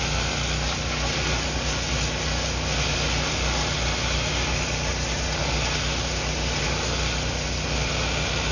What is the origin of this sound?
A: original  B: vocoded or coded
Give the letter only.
A